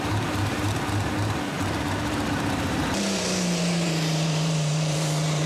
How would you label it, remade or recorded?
remade